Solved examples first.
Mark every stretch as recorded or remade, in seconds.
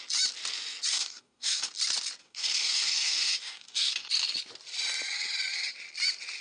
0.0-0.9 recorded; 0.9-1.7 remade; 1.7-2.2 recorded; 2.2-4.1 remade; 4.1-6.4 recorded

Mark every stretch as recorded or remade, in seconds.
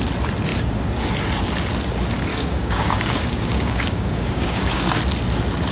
0.0-2.3 recorded; 2.3-5.0 remade; 5.0-5.7 recorded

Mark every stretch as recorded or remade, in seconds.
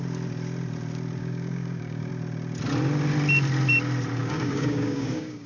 0.0-1.2 recorded; 1.2-2.1 remade; 2.1-4.2 recorded; 4.2-5.5 remade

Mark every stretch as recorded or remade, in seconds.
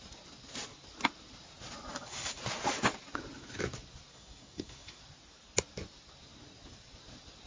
0.0-1.9 recorded; 1.9-2.4 remade; 2.4-4.1 recorded; 4.1-5.0 remade; 5.0-7.5 recorded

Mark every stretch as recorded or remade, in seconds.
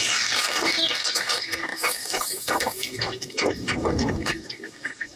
0.0-5.2 remade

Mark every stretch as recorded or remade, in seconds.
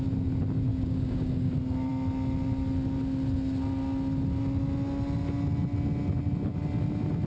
0.0-0.7 recorded; 0.7-1.5 remade; 1.5-7.3 recorded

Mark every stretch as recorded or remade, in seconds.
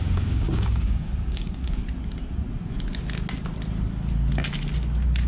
0.0-1.8 remade; 1.8-5.3 recorded